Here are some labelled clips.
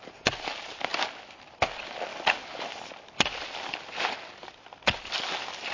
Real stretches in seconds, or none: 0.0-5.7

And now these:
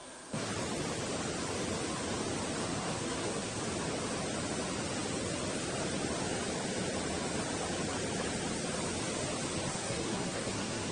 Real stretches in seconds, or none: 0.5-2.6; 3.6-9.7

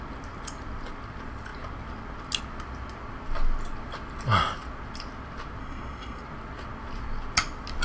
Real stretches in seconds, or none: 0.0-5.6; 6.2-7.8

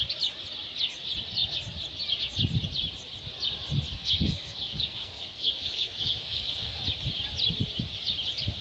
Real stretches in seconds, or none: 0.0-3.9; 6.8-8.6

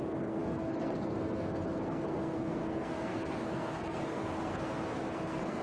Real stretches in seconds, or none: none

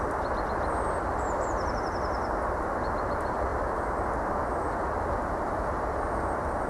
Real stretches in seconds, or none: 0.0-6.7

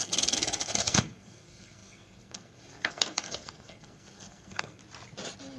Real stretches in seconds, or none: 4.8-5.6